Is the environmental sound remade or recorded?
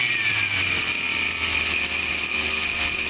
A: recorded